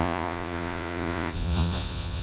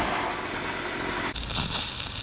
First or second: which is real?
second